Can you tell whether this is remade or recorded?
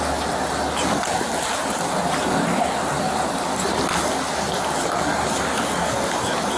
recorded